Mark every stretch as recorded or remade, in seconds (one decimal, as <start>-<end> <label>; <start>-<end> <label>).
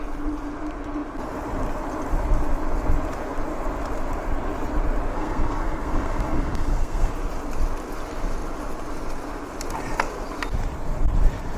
0.0-5.1 recorded; 5.1-7.1 remade; 7.1-11.6 recorded